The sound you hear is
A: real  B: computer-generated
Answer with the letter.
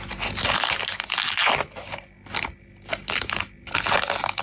A